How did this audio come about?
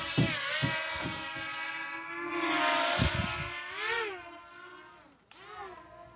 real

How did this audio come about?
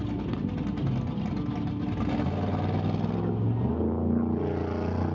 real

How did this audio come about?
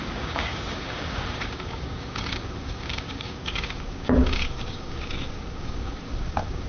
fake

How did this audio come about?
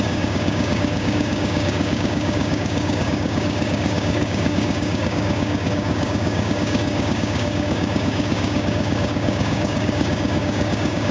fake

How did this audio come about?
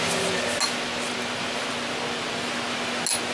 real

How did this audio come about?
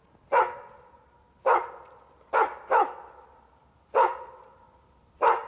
real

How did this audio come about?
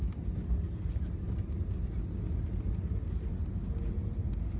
real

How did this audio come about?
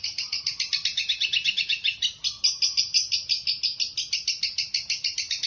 real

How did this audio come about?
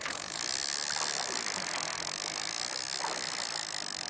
real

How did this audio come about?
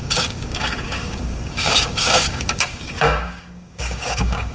fake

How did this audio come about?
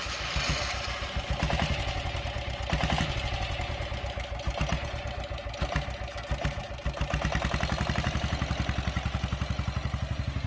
real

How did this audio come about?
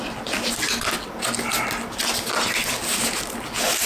real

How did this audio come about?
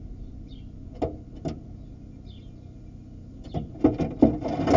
real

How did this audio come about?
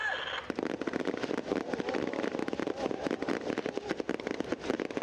real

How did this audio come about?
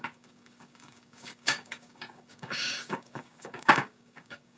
fake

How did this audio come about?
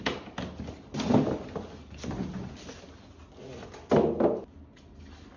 real